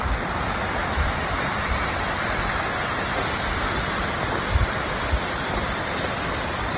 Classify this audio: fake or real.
real